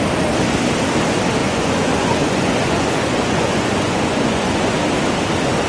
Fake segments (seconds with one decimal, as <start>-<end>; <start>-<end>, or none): 1.4-4.8